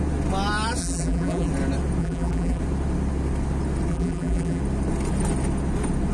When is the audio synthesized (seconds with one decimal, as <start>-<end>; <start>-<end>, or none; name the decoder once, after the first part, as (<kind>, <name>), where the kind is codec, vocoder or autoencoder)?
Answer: 0.8-1.5 (vocoder, BigVGAN v2); 2.0-2.6; 3.9-4.6

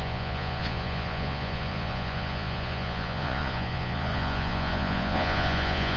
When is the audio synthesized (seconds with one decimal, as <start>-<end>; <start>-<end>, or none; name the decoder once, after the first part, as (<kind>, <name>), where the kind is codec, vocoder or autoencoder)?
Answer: 0.0-6.0 (vocoder, Vocos)

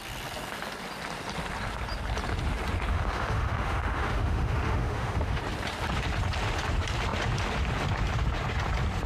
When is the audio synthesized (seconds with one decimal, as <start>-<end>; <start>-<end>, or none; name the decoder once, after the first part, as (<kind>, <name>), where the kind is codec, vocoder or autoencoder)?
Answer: 2.9-5.4 (autoencoder, DAC-VAE)

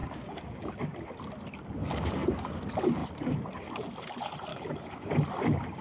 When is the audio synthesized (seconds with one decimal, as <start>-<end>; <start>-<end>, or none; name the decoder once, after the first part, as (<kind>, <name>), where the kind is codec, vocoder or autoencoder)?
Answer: 0.0-0.8 (codec, DAC); 1.8-2.6; 4.5-5.1

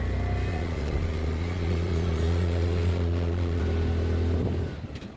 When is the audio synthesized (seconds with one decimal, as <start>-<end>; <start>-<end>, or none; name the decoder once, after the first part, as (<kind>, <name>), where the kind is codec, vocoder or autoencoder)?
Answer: 0.5-3.6 (vocoder, Vocos)

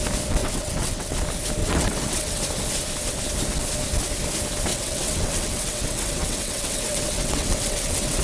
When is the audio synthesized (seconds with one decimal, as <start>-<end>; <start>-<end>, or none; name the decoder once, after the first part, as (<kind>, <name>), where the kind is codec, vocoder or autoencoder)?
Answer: 0.4-1.1 (vocoder, WaveNeXt); 1.6-2.4; 4.7-8.2